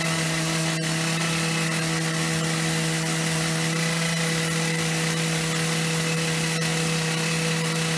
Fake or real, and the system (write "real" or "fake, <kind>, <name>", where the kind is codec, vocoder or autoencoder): real